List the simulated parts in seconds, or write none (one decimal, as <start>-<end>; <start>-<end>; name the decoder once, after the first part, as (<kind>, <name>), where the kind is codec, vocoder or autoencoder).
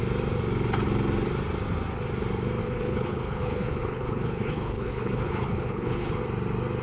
2.6-6.2 (codec, HILCodec)